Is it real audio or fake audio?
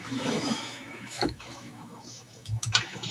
fake